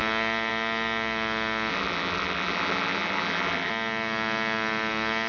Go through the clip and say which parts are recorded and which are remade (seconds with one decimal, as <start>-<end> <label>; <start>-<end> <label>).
0.0-1.7 recorded; 1.7-3.7 remade; 3.7-5.3 recorded